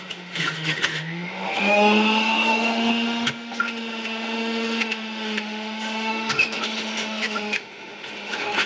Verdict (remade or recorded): remade